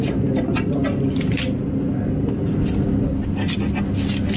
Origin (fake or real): real